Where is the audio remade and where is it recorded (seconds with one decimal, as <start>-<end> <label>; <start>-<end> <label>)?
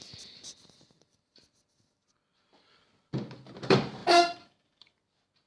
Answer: 0.0-4.0 recorded; 4.0-4.9 remade; 4.9-5.5 recorded